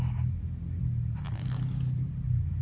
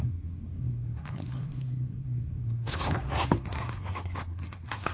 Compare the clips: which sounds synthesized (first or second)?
second